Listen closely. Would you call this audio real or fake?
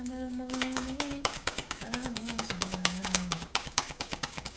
fake